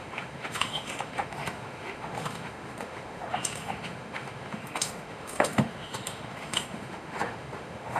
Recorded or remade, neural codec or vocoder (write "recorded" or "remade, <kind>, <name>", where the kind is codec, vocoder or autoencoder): remade, autoencoder, DAC-VAE